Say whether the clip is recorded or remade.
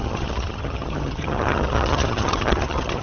remade